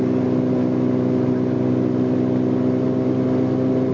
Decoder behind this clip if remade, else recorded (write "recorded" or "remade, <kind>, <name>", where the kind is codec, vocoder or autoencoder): recorded